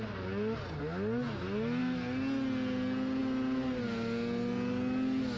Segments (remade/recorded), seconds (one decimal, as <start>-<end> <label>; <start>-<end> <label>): 0.0-5.4 recorded